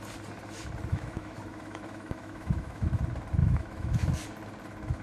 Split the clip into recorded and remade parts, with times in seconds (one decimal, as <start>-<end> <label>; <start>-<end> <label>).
0.0-0.9 recorded; 0.9-3.0 remade; 3.0-3.4 recorded; 3.4-4.0 remade; 4.0-5.0 recorded